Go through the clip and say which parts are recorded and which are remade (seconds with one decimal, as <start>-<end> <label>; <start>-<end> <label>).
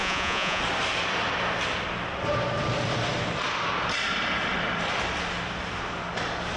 0.0-0.6 remade; 0.6-6.6 recorded